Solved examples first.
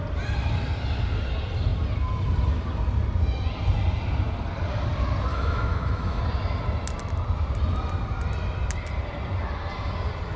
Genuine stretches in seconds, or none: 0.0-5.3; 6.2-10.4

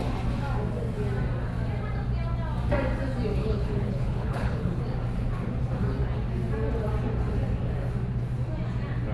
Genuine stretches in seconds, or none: 0.0-3.4; 4.8-9.1